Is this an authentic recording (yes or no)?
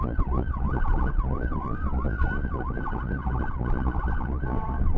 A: no